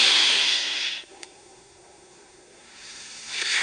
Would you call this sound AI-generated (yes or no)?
yes